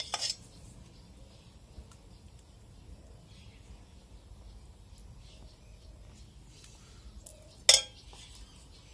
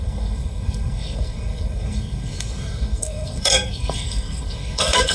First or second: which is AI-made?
second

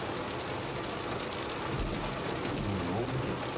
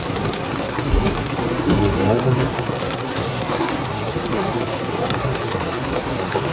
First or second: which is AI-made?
second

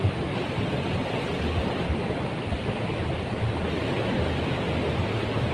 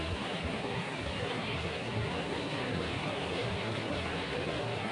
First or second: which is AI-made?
second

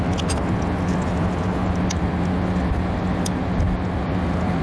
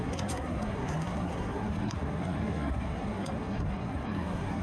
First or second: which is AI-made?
second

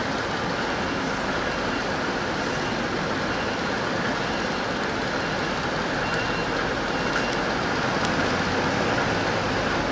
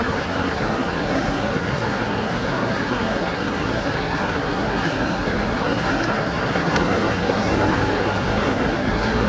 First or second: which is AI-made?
second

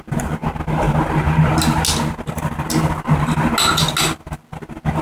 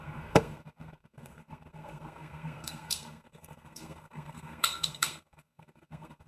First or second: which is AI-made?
second